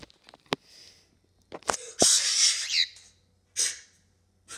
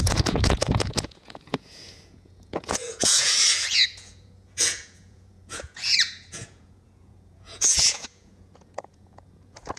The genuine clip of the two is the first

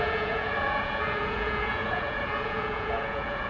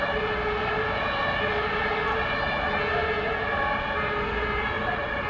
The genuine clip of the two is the second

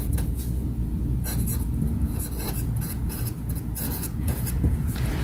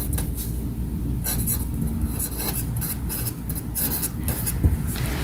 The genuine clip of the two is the second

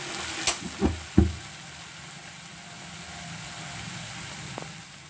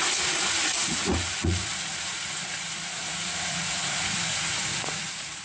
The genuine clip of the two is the first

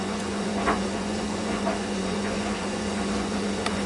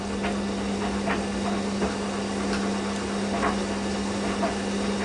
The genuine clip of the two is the second